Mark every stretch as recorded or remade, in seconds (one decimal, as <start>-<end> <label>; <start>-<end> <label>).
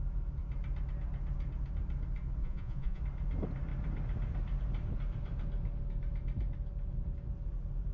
0.0-2.4 recorded; 2.4-3.0 remade; 3.0-7.9 recorded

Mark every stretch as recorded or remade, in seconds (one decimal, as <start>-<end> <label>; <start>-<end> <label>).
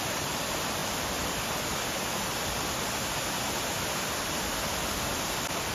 0.0-5.7 recorded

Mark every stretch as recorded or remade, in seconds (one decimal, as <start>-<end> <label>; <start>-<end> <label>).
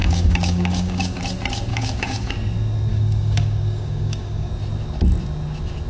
0.0-1.2 remade; 1.2-1.7 recorded; 1.7-2.3 remade; 2.3-2.9 recorded; 2.9-4.5 remade; 4.5-5.9 recorded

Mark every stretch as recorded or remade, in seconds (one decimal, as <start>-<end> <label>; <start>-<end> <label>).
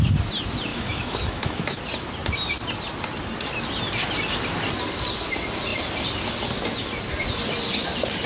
0.0-0.7 recorded; 0.7-1.8 remade; 1.8-8.3 recorded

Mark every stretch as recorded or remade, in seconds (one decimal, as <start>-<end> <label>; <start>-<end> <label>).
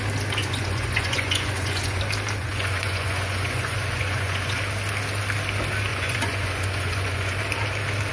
0.0-0.4 recorded; 0.4-2.0 remade; 2.0-2.4 recorded; 2.4-4.6 remade; 4.6-5.9 recorded; 5.9-7.4 remade; 7.4-8.1 recorded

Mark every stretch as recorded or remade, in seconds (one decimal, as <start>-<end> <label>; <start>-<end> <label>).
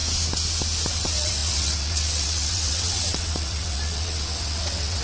0.0-0.9 recorded; 0.9-5.0 remade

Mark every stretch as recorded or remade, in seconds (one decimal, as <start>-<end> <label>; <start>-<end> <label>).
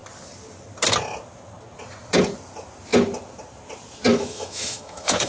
0.0-4.1 recorded; 4.1-5.3 remade